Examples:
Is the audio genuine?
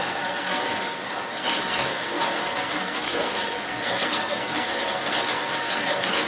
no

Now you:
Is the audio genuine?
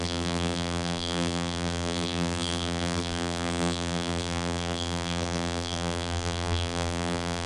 no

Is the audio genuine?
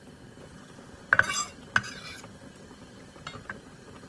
yes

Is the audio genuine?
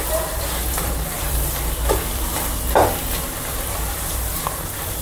no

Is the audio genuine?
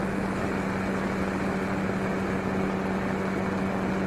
yes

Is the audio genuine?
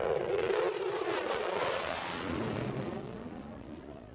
no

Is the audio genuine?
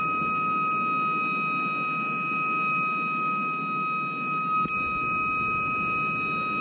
yes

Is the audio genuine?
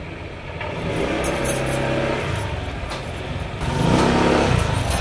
yes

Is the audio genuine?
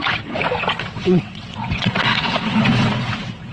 no